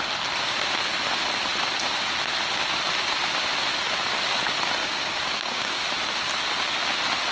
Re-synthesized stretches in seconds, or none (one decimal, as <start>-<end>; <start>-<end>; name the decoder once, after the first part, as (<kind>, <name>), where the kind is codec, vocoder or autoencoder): 4.8-5.8 (codec, DAC)